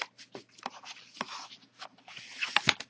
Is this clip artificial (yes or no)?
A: no